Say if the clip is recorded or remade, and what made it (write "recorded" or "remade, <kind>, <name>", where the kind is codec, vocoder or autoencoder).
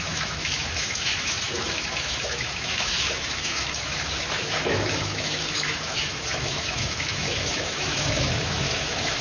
remade, autoencoder, DAC-VAE